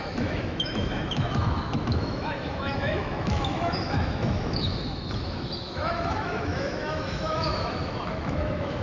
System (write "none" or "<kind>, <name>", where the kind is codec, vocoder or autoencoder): autoencoder, DAC-VAE